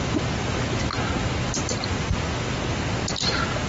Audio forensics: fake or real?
real